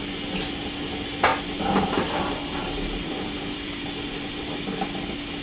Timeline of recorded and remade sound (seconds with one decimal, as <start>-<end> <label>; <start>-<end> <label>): 0.0-1.3 recorded; 1.3-4.5 remade; 4.5-5.4 recorded